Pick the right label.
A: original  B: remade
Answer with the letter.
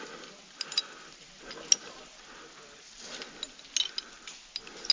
A